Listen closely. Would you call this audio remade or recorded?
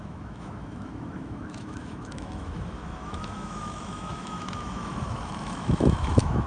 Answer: remade